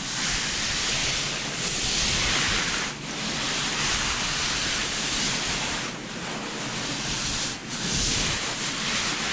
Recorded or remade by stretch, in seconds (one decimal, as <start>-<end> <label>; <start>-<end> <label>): 0.0-9.3 recorded

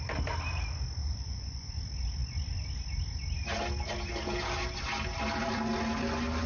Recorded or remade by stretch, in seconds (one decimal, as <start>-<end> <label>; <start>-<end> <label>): 0.0-1.0 recorded; 1.0-1.7 remade; 1.7-6.5 recorded